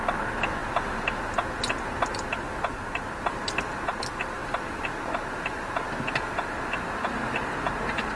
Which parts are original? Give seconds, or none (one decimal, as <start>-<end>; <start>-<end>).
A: 0.0-8.2